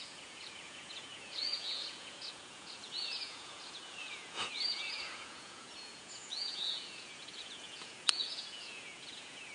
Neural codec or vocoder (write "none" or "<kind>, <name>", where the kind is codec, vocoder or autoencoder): vocoder, Vocos